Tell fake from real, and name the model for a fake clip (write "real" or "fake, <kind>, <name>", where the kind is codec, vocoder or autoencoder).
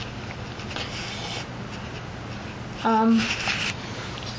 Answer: real